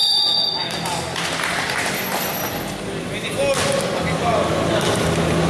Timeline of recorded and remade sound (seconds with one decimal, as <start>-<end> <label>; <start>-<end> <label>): 0.0-5.5 recorded